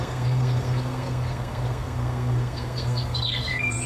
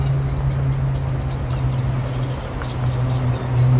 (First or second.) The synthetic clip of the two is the first